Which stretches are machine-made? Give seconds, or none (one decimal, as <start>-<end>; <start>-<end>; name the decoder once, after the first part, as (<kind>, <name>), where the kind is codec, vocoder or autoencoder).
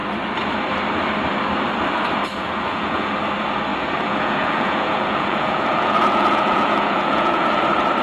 2.3-3.1 (vocoder, Vocos); 3.7-7.6